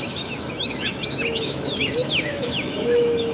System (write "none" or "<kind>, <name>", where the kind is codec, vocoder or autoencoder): autoencoder, DAC-VAE